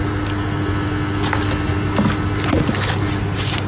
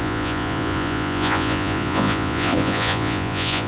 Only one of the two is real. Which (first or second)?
first